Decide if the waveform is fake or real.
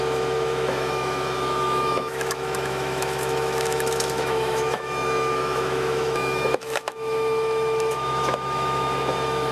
fake